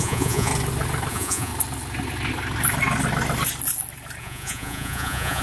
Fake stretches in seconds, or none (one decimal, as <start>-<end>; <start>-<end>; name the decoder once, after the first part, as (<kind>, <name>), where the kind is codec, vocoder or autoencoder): 0.0-0.5 (vocoder, Vocos); 1.1-1.5; 4.2-5.4